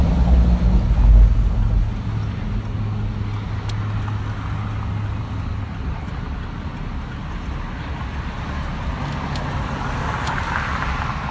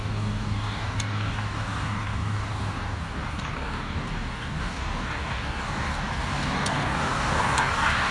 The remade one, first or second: second